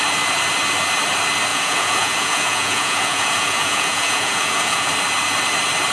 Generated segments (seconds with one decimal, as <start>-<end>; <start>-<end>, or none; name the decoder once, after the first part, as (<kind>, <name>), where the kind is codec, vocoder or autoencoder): 1.5-4.9 (vocoder, Vocos)